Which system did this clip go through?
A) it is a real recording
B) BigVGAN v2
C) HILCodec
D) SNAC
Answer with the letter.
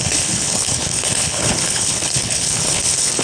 C